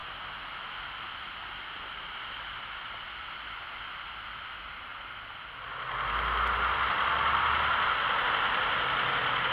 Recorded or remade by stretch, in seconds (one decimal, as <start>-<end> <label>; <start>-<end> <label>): 0.0-1.9 recorded; 1.9-2.9 remade; 2.9-9.5 recorded